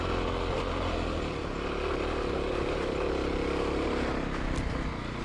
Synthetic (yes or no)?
no